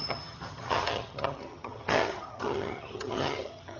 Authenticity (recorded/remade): remade